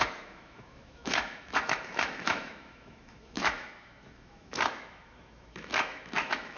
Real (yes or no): no